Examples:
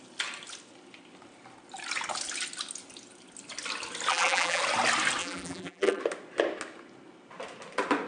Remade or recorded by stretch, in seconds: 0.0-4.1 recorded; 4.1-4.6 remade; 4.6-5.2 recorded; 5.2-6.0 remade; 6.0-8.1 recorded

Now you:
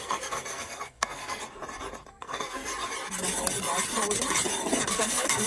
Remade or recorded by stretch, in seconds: 0.0-1.4 remade; 1.4-2.1 recorded; 2.1-2.7 remade; 2.7-4.9 recorded; 4.9-5.5 remade

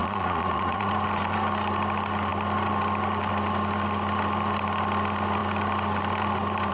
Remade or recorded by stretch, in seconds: 0.0-0.9 remade; 0.9-6.7 recorded

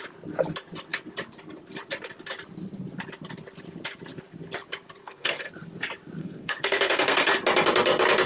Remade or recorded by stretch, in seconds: 0.0-5.0 recorded; 5.0-5.5 remade; 5.5-6.2 recorded; 6.2-7.3 remade; 7.3-8.3 recorded

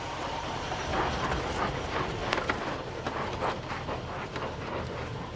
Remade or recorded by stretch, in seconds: 0.0-0.9 remade; 0.9-1.5 recorded; 1.5-2.2 remade; 2.2-4.9 recorded; 4.9-5.4 remade

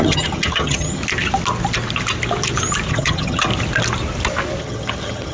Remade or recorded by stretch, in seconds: 0.0-1.0 remade; 1.0-2.9 recorded; 2.9-3.5 remade; 3.5-4.6 recorded; 4.6-5.3 remade